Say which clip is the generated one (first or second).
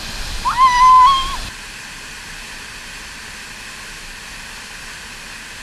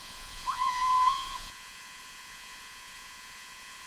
second